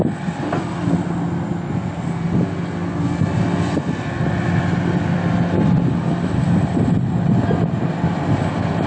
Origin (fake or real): real